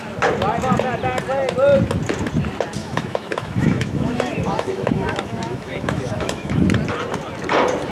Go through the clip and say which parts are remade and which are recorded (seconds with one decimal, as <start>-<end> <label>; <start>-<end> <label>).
0.0-2.8 recorded; 2.8-6.6 remade; 6.6-7.9 recorded